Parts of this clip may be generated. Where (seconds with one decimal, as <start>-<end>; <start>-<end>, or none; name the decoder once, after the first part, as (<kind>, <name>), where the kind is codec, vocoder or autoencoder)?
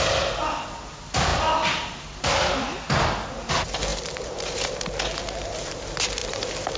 1.3-2.0 (vocoder, BigVGAN v2); 3.9-4.9; 6.2-6.8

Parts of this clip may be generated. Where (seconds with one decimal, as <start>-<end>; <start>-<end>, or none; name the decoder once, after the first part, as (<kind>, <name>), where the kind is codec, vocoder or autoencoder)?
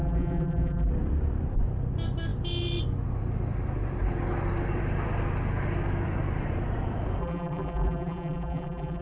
0.0-0.9 (vocoder, BigVGAN v2); 7.2-9.0